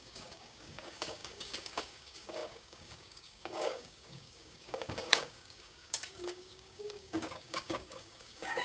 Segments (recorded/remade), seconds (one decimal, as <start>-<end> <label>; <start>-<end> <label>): 0.0-8.6 remade